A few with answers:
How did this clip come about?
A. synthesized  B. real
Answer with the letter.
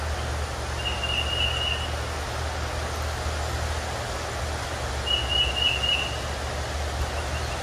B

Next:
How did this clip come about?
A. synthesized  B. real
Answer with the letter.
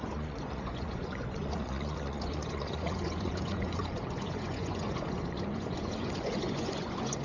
A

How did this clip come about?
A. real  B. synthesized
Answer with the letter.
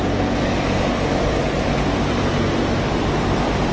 A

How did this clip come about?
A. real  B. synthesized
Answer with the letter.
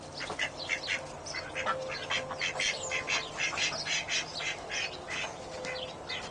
A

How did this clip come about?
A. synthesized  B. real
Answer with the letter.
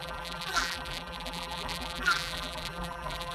A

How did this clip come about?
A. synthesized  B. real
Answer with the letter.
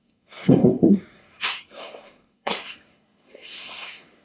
A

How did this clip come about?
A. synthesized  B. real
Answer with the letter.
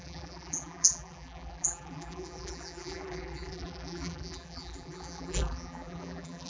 A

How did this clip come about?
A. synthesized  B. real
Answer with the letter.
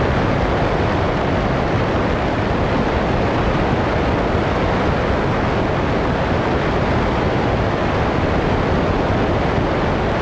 B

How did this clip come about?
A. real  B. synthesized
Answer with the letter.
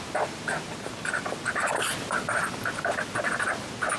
A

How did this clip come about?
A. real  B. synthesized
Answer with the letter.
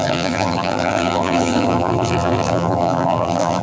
B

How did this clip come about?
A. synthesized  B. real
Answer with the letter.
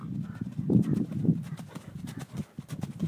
B